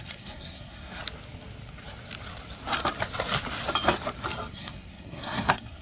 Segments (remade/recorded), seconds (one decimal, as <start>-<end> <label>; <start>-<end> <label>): 0.0-1.0 remade; 1.0-4.5 recorded; 4.5-5.8 remade